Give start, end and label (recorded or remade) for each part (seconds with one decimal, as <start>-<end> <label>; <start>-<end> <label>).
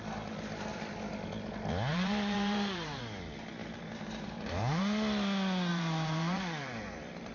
0.0-1.9 recorded; 1.9-3.0 remade; 3.0-3.6 recorded; 3.6-4.8 remade; 4.8-5.7 recorded; 5.7-7.3 remade